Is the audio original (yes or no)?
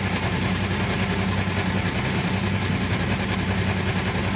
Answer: yes